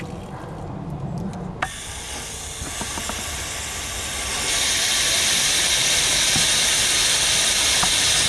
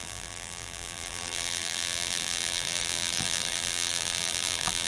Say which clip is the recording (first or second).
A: first